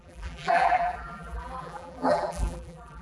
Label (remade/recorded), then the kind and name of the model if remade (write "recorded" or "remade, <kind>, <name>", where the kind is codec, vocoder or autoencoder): remade, vocoder, BigVGAN v2